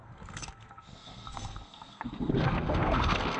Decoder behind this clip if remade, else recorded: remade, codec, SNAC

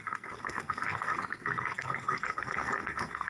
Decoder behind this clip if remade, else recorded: remade, codec, SNAC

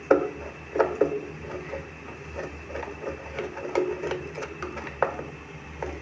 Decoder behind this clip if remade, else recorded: recorded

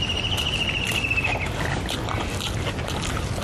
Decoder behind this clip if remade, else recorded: recorded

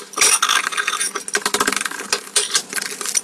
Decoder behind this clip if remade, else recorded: recorded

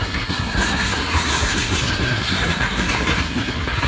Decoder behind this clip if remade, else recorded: remade, codec, SNAC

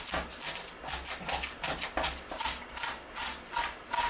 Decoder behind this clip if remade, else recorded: recorded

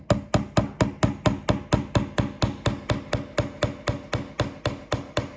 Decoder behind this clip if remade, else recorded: recorded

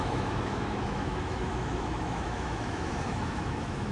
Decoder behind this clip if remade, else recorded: remade, autoencoder, DAC-VAE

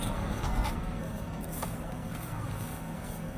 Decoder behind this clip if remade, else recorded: remade, codec, SNAC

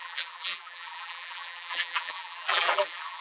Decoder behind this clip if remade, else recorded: remade, vocoder, BigVGAN v2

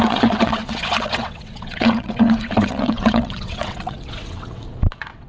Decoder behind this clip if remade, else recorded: remade, vocoder, WaveNeXt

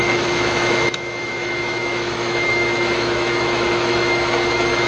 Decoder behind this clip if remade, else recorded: remade, autoencoder, DAC-VAE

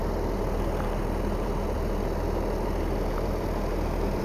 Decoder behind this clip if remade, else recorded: remade, vocoder, BigVGAN v2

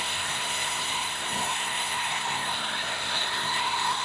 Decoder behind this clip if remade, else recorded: remade, codec, SNAC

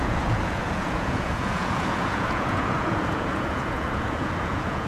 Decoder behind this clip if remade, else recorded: remade, vocoder, Vocos